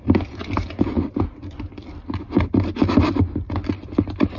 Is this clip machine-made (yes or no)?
no